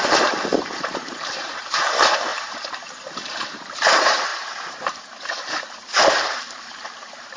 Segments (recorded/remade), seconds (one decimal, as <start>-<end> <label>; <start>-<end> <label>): 0.0-7.4 remade